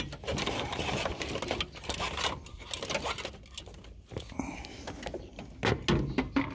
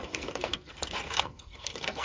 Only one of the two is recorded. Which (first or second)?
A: first